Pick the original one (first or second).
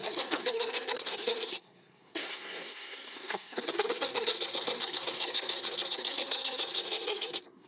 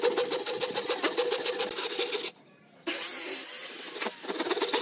second